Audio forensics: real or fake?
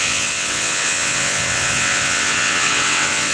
fake